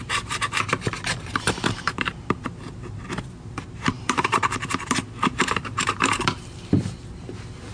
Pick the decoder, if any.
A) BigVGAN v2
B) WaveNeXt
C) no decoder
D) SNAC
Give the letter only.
A